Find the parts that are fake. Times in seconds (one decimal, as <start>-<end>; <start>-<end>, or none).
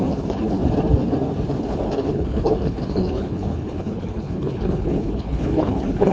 0.0-0.6; 1.6-6.1